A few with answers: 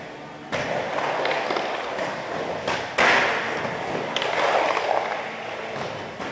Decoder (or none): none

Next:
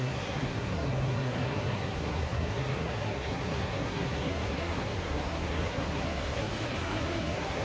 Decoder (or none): codec, SNAC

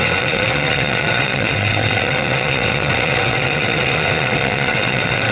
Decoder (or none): vocoder, WaveNeXt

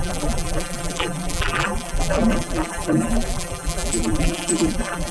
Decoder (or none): vocoder, BigVGAN v2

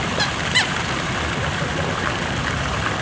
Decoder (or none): vocoder, BigVGAN v2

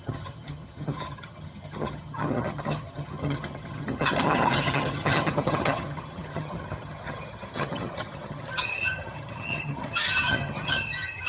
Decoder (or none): vocoder, HiFi-GAN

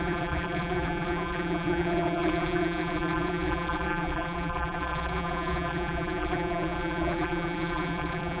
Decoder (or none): vocoder, BigVGAN v2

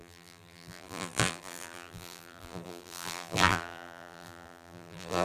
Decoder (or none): vocoder, BigVGAN v2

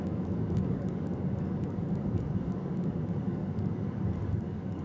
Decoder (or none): codec, DAC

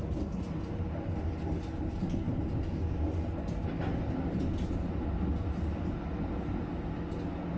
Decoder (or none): none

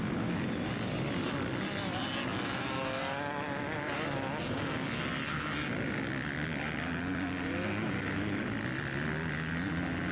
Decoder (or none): none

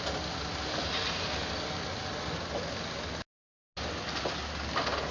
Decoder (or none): none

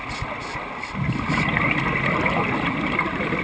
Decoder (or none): none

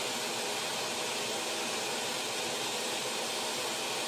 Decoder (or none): none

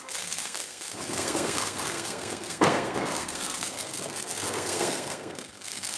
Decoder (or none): codec, SNAC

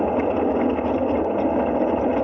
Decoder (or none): none